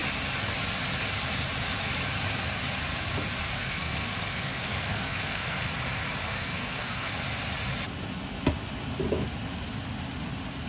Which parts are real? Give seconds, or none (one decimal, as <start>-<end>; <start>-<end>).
0.0-3.4; 5.7-6.2; 7.1-10.7